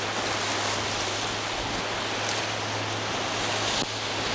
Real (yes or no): yes